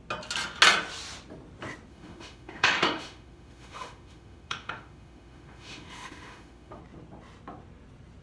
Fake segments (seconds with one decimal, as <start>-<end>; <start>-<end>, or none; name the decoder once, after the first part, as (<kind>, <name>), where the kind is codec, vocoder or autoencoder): 1.9-6.8 (autoencoder, DAC-VAE)